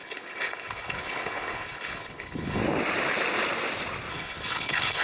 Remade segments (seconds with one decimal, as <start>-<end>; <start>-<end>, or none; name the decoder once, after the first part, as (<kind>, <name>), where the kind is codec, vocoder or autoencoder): 0.0-2.6 (codec, HILCodec); 4.1-5.0